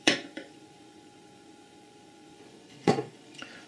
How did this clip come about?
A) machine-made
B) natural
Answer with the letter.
A